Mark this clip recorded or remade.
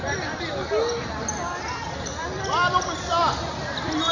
recorded